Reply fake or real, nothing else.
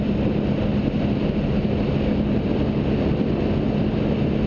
real